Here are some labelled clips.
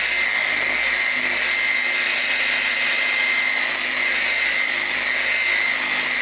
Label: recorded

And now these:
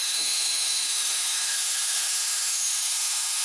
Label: remade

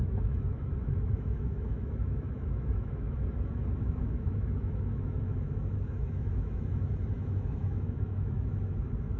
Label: remade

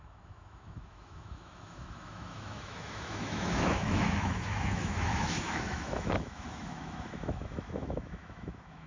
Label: remade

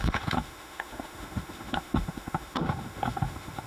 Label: remade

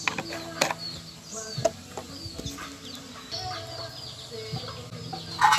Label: recorded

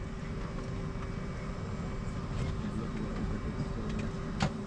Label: recorded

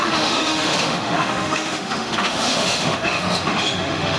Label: remade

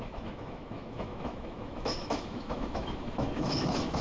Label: remade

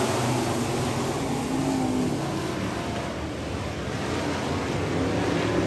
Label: recorded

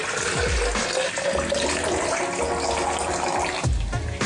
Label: recorded